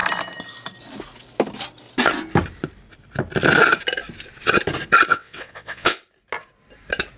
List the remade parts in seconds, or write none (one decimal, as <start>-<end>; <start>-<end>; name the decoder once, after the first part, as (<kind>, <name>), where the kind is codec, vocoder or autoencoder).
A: 5.1-6.0 (vocoder, WaveNeXt)